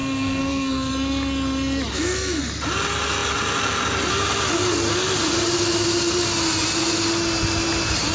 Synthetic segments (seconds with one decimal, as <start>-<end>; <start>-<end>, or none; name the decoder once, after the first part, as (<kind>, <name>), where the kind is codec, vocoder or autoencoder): 0.0-0.9 (codec, SNAC); 1.9-2.4